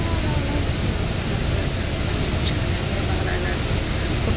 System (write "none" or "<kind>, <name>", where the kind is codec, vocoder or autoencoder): none